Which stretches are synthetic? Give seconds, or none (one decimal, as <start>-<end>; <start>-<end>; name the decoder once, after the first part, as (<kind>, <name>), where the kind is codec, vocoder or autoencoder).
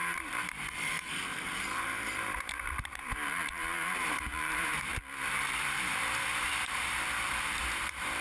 0.0-4.9 (vocoder, BigVGAN v2); 5.5-8.2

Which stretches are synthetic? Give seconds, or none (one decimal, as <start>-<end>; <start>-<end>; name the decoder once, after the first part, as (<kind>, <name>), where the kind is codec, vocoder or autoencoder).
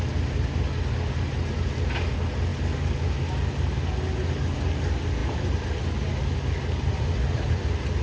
5.2-5.7 (vocoder, BigVGAN v2)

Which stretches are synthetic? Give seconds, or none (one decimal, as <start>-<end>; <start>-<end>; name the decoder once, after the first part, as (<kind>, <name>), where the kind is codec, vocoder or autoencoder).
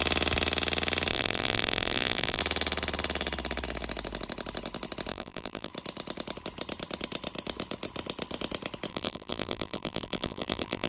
1.1-2.4 (vocoder, BigVGAN v2); 5.1-5.7; 8.9-10.9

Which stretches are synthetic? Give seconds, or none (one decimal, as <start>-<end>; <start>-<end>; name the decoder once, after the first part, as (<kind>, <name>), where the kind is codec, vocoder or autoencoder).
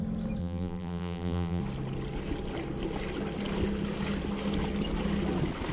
0.4-1.6 (vocoder, BigVGAN v2)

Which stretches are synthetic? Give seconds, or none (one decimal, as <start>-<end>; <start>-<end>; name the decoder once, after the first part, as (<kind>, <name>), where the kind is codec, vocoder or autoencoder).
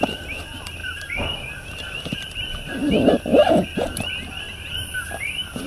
0.0-3.3 (vocoder, BigVGAN v2); 4.4-5.7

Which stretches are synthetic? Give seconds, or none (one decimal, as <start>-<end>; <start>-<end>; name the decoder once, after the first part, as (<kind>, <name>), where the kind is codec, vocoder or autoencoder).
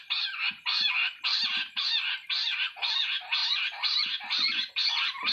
3.4-4.7 (vocoder, BigVGAN v2)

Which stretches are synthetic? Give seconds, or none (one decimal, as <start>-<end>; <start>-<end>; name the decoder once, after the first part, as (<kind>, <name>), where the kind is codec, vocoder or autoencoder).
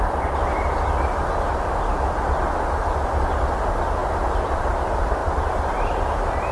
0.0-0.4 (vocoder, BigVGAN v2); 3.1-4.0; 4.6-6.5